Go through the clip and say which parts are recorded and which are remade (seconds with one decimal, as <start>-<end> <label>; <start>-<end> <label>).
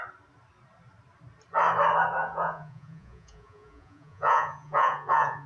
0.0-2.2 recorded; 2.2-5.5 remade